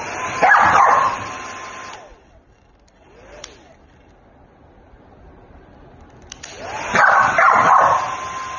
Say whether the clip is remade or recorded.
recorded